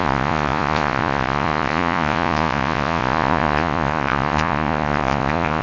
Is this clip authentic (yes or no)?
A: no